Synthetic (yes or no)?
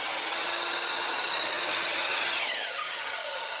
yes